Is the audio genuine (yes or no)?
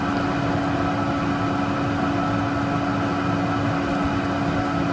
yes